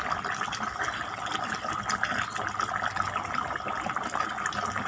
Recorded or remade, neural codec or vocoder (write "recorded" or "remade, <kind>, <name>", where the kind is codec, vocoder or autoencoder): recorded